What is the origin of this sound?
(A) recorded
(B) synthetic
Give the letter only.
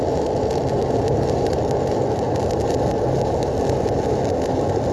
A